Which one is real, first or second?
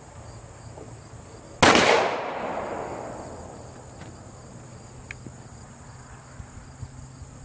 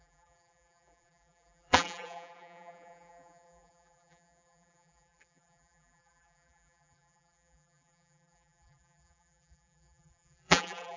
first